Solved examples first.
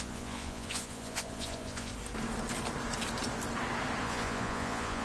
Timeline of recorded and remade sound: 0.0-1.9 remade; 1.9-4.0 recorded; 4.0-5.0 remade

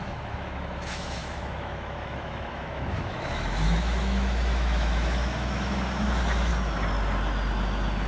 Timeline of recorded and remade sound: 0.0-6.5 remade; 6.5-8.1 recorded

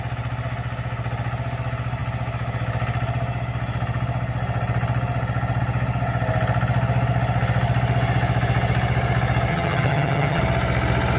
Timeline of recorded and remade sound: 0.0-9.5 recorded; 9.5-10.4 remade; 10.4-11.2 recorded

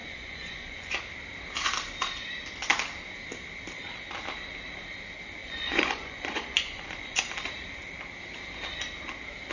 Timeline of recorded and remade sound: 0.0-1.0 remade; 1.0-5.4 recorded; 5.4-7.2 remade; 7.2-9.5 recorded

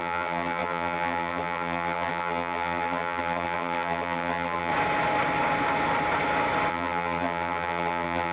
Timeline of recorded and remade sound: 0.0-4.7 remade; 4.7-6.7 recorded; 6.7-8.3 remade

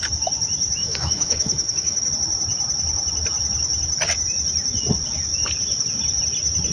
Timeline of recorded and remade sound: 0.0-0.8 recorded; 0.8-2.1 remade; 2.1-6.7 recorded